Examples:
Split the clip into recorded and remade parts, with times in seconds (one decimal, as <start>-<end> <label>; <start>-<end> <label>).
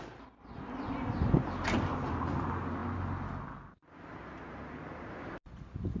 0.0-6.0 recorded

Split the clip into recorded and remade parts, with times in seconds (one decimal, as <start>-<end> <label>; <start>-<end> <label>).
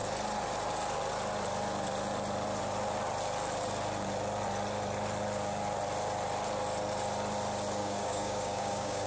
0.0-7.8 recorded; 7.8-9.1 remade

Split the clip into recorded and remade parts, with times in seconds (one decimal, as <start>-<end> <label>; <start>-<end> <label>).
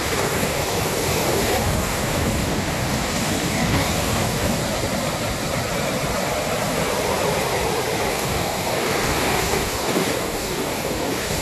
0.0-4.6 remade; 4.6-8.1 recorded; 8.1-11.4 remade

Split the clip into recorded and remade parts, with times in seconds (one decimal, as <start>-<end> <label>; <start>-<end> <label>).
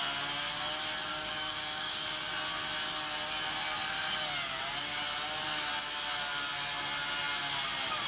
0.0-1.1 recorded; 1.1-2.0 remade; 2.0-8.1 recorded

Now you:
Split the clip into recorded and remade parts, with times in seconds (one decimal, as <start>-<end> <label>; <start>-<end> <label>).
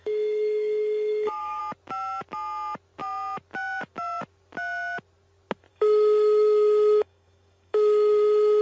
0.0-1.6 remade; 1.6-5.7 recorded; 5.7-8.6 remade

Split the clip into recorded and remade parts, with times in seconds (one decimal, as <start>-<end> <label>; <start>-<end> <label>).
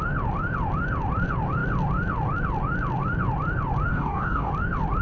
0.0-3.9 recorded; 3.9-4.5 remade; 4.5-5.0 recorded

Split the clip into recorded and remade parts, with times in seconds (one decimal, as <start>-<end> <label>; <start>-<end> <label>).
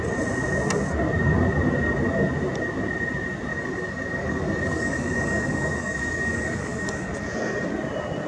0.0-3.5 recorded; 3.5-7.2 remade; 7.2-8.3 recorded